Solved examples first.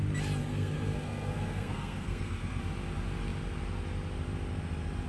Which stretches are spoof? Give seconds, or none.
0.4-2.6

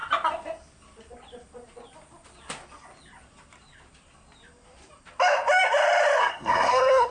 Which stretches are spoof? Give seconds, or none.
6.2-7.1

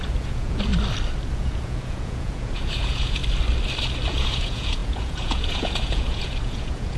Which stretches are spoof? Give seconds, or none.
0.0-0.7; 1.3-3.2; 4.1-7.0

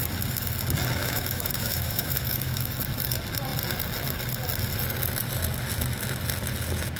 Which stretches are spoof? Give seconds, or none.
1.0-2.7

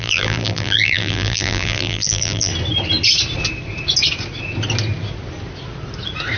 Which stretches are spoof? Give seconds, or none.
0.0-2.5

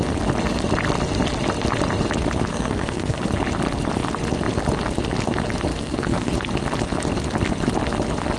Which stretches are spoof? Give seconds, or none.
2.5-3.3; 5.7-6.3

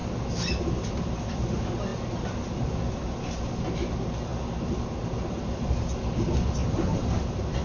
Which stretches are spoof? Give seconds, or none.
none